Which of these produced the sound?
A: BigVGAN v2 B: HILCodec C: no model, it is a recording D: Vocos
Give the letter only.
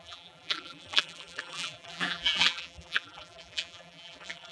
A